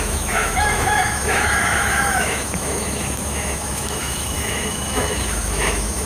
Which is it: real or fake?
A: fake